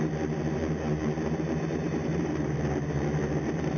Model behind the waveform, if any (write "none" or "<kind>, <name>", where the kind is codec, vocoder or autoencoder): vocoder, BigVGAN v2